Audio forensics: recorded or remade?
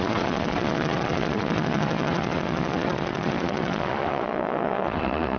remade